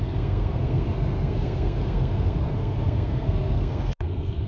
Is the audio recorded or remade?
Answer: remade